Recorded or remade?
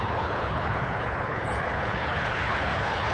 remade